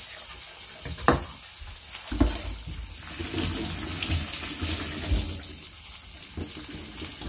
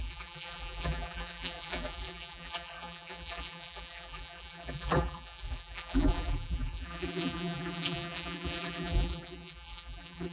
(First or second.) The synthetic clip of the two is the second